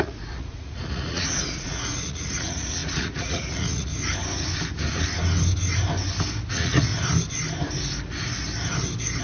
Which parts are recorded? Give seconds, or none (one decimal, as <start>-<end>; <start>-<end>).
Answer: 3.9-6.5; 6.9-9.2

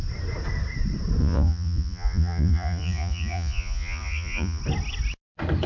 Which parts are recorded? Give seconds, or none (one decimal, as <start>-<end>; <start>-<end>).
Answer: 0.0-1.2; 4.6-5.7

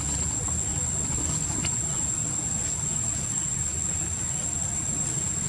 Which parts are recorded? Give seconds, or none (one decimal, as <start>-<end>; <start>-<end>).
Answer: 0.0-5.5

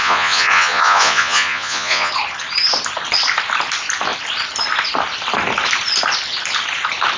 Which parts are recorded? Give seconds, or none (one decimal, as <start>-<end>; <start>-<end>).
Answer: 2.1-7.2

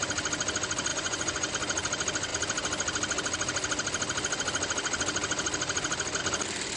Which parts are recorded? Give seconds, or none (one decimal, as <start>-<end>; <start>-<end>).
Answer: 0.0-0.9; 1.5-6.8

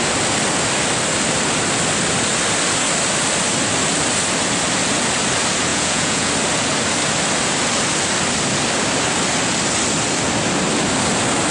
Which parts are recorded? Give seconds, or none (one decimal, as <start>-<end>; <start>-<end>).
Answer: 0.0-5.7; 6.3-11.5

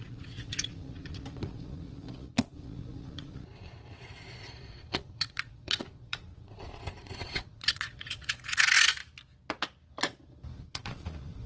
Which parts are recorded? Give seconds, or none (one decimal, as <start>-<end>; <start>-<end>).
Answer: 9.0-10.6

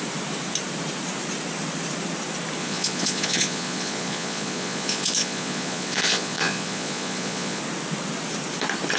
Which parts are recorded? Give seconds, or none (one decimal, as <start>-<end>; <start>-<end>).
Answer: 0.0-2.6; 7.6-9.0